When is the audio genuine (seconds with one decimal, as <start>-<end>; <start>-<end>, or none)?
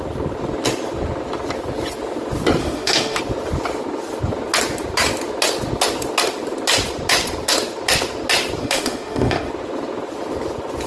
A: 0.0-2.6; 3.2-8.6; 9.5-10.9